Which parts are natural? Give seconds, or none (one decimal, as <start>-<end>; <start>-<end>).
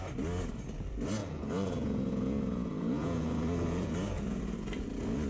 0.0-1.2; 4.4-5.3